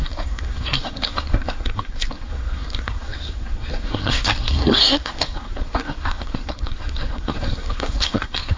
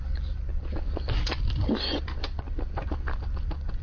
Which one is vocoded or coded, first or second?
first